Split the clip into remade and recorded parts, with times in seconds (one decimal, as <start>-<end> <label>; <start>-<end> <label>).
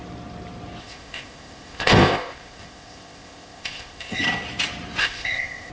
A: 0.0-0.8 recorded; 0.8-4.2 remade; 4.2-5.0 recorded; 5.0-5.7 remade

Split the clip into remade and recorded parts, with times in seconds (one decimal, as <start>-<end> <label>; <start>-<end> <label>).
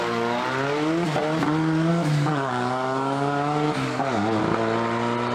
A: 0.0-1.9 recorded; 1.9-4.4 remade; 4.4-5.3 recorded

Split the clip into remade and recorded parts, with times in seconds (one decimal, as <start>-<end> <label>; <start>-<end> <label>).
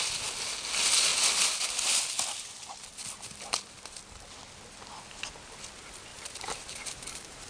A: 0.0-6.1 recorded; 6.1-7.5 remade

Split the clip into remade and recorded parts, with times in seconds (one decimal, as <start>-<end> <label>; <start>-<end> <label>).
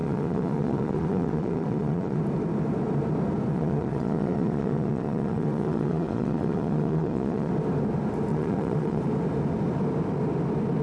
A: 0.0-2.2 remade; 2.2-3.5 recorded; 3.5-7.5 remade; 7.5-8.3 recorded; 8.3-9.0 remade; 9.0-10.8 recorded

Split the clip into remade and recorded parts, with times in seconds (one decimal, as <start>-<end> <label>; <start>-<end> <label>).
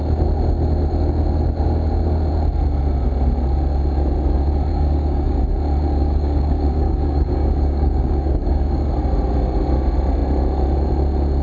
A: 0.0-4.7 recorded; 4.7-5.4 remade; 5.4-6.0 recorded; 6.0-8.9 remade; 8.9-11.4 recorded